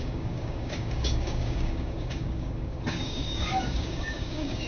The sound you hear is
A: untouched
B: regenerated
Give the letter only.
B